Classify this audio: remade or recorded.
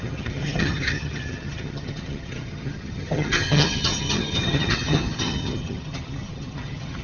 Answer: remade